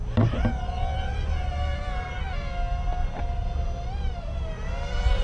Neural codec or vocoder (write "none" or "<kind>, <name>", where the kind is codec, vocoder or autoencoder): none